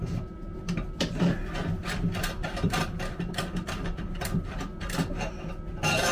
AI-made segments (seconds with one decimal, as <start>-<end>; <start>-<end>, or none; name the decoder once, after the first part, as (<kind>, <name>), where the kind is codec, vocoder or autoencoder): 1.8-5.5 (vocoder, BigVGAN v2)